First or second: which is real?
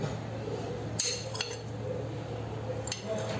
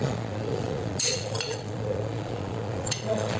first